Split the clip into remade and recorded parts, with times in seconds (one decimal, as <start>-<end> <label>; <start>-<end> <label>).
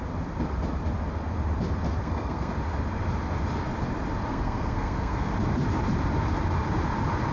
0.0-2.0 recorded; 2.0-2.6 remade; 2.6-4.3 recorded; 4.3-5.3 remade; 5.3-7.3 recorded